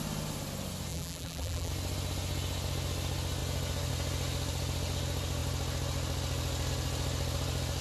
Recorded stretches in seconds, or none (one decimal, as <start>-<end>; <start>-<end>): 0.0-0.9; 1.7-7.8